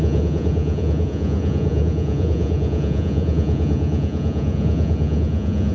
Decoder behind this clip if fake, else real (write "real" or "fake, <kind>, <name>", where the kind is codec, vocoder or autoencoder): fake, vocoder, Vocos